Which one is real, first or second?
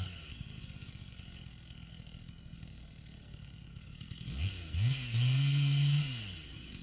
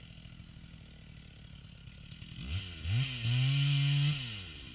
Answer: second